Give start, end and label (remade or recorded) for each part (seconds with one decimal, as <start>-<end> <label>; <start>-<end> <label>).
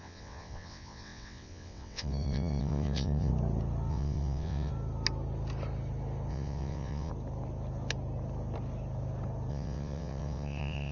0.0-3.3 remade; 3.3-3.9 recorded; 3.9-4.7 remade; 4.7-6.3 recorded; 6.3-7.1 remade; 7.1-9.5 recorded; 9.5-10.9 remade